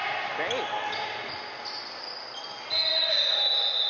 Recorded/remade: recorded